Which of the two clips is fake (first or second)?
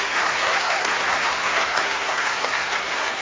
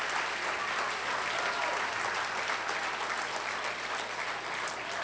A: first